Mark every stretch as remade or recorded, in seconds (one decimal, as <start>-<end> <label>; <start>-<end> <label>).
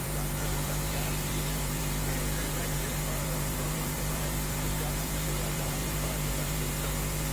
0.0-7.3 remade